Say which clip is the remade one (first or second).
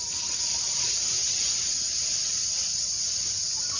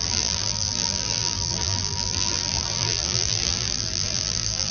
second